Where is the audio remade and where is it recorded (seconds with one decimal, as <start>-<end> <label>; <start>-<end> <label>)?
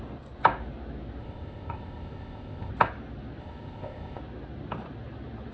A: 0.0-1.2 recorded; 1.2-2.7 remade; 2.7-3.4 recorded; 3.4-4.2 remade; 4.2-5.5 recorded